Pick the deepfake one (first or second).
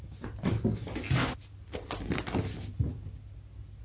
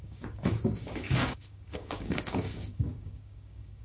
second